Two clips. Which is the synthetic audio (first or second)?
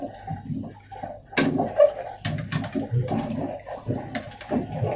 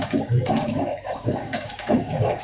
second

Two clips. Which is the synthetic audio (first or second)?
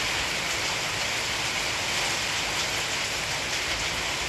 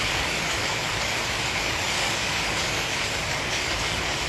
second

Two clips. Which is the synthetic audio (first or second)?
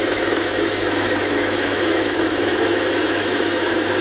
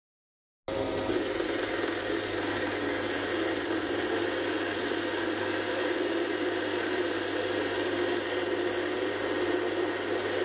first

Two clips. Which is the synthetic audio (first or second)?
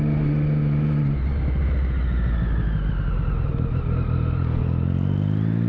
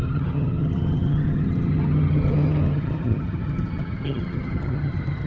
second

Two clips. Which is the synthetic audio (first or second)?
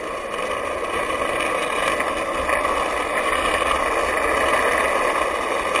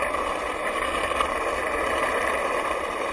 second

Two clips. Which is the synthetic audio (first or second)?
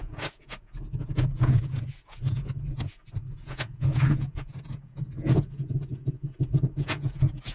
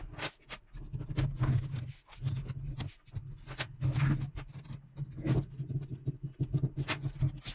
first